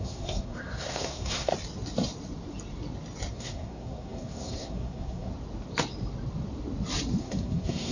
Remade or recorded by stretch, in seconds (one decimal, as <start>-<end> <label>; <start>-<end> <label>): 0.0-1.5 remade; 1.5-3.3 recorded; 3.3-5.3 remade; 5.3-7.2 recorded; 7.2-7.9 remade